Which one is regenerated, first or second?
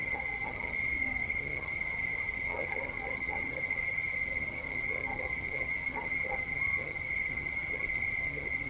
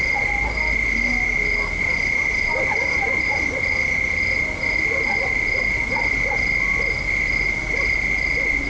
first